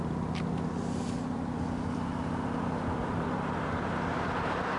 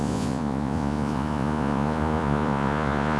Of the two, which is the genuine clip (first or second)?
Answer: first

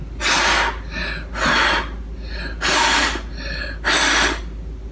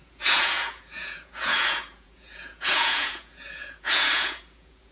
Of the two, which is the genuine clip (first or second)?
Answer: first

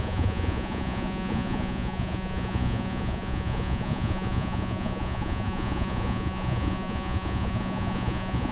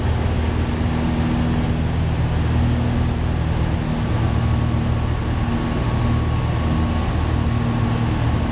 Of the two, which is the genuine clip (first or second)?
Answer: second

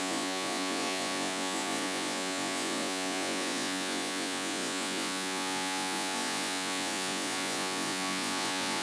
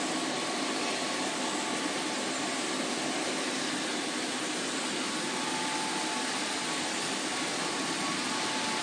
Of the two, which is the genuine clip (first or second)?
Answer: second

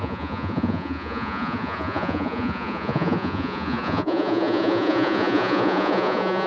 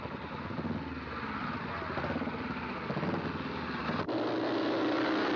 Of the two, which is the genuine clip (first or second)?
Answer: second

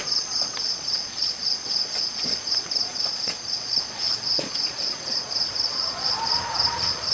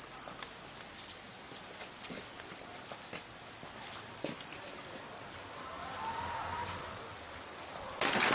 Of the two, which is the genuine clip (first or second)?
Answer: second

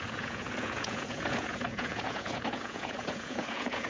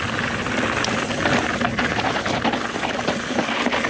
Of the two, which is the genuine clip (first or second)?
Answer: second